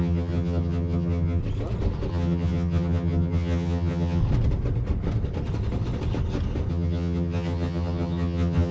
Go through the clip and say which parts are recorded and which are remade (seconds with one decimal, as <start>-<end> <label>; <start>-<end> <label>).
0.0-1.4 remade; 1.4-2.1 recorded; 2.1-4.2 remade; 4.2-6.7 recorded; 6.7-8.7 remade